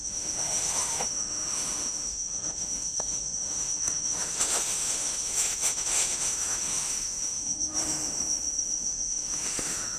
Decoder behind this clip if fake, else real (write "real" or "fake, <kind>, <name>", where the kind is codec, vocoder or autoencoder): fake, autoencoder, DAC-VAE